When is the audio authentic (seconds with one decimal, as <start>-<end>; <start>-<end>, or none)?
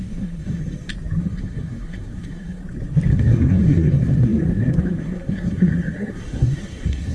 0.6-1.2; 2.6-3.1